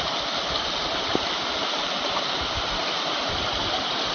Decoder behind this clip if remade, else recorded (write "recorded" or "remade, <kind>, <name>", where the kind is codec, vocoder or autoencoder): recorded